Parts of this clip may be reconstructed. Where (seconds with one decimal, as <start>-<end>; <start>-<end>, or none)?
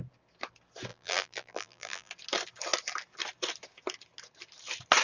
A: 0.9-2.1